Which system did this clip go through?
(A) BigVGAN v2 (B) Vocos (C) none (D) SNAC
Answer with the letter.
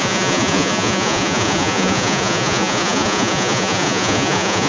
B